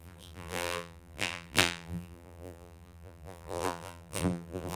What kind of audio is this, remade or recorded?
remade